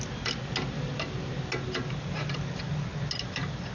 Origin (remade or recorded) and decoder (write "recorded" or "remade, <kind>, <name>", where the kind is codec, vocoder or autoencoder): recorded